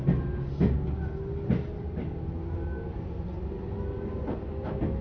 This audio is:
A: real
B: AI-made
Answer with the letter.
A